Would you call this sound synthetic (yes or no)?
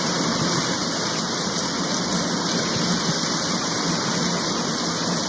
no